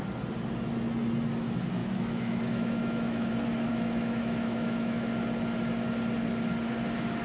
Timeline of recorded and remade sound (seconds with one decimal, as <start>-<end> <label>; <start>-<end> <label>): 0.0-1.8 recorded; 1.8-3.3 remade; 3.3-3.7 recorded; 3.7-5.1 remade; 5.1-7.2 recorded